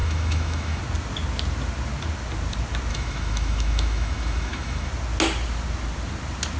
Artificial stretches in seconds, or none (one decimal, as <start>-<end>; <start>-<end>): 0.0-0.8; 2.9-4.9